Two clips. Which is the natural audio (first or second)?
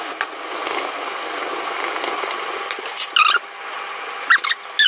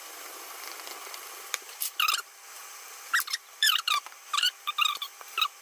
first